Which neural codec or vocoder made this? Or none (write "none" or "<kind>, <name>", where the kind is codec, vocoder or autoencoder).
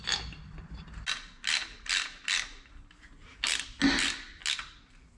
none